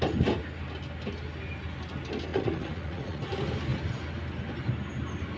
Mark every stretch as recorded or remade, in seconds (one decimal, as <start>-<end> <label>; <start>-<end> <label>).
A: 0.0-2.3 recorded; 2.3-3.2 remade; 3.2-5.4 recorded